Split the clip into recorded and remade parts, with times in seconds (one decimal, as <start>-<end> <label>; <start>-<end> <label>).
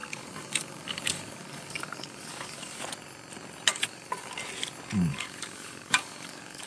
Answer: 0.0-2.8 remade; 2.8-3.7 recorded; 3.7-4.3 remade; 4.3-5.1 recorded; 5.1-6.7 remade